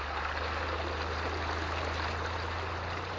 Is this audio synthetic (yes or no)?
yes